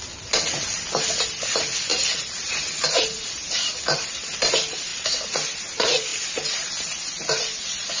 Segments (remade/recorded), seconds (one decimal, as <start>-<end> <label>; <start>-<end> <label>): 0.0-8.0 recorded

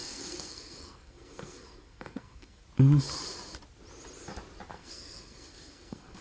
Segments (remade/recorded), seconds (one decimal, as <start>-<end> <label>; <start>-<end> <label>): 0.0-2.6 remade; 2.6-4.7 recorded; 4.7-6.2 remade

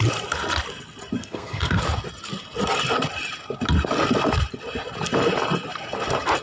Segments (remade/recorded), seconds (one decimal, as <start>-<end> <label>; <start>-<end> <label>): 0.0-1.2 recorded; 1.2-1.8 remade; 1.8-6.4 recorded

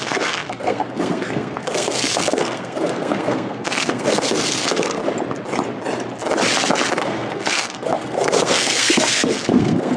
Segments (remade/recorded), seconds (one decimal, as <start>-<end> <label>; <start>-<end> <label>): 0.0-5.0 remade; 5.0-6.9 recorded; 6.9-10.0 remade